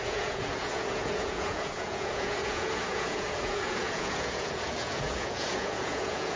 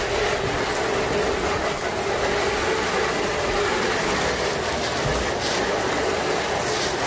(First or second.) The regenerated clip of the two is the first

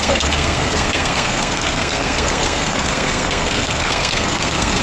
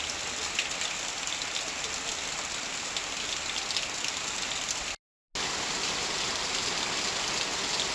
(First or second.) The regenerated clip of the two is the first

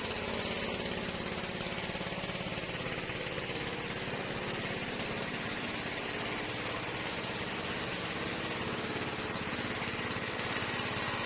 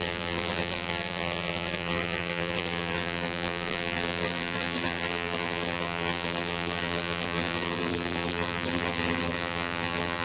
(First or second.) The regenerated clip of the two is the second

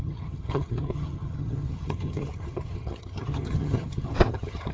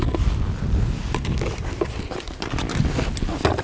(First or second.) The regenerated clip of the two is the first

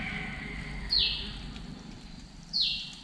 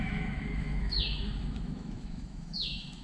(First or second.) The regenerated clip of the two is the second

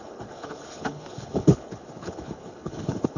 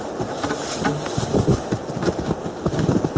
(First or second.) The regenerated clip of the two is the first